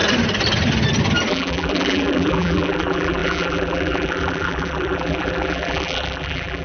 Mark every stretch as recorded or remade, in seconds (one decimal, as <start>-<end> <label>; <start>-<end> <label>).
0.0-1.3 recorded; 1.3-6.6 remade